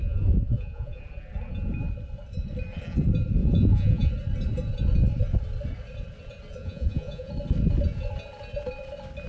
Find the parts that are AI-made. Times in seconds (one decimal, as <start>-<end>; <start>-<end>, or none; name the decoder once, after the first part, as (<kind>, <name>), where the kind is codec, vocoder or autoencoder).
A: 0.0-1.0 (vocoder, Vocos); 3.4-4.1; 6.6-7.3